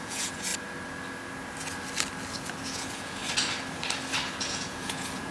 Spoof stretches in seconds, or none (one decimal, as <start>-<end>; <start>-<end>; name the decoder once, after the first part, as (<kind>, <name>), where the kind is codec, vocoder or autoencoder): 0.0-0.5 (vocoder, Vocos); 2.6-3.2; 4.5-5.3